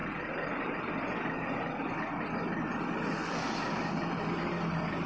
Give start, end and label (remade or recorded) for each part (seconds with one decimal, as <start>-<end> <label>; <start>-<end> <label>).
0.0-0.9 remade; 0.9-5.1 recorded